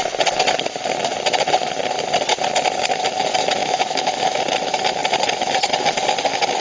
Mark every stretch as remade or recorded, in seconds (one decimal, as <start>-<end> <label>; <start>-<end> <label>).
0.0-3.6 recorded; 3.6-4.4 remade; 4.4-6.6 recorded